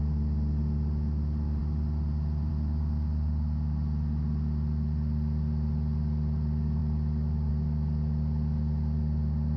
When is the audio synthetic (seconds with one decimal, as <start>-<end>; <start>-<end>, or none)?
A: none